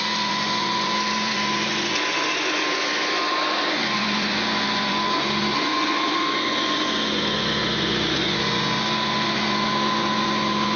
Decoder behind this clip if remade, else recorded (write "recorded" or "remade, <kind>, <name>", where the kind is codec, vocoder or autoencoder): remade, vocoder, Vocos